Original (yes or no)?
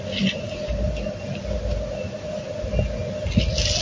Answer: yes